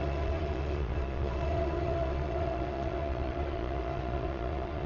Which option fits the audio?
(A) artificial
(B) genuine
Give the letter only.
A